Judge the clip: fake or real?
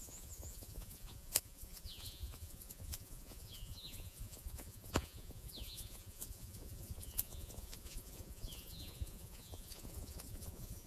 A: fake